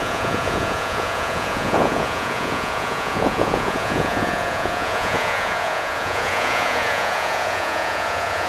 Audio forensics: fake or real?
fake